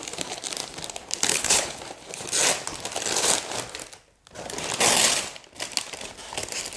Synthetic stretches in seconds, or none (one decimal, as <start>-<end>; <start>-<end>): 1.3-1.8